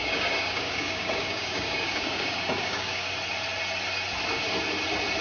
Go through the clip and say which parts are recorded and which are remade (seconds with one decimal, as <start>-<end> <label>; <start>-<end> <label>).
0.0-3.1 remade; 3.1-5.2 recorded